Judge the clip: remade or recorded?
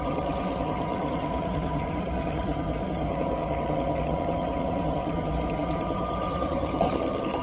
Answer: remade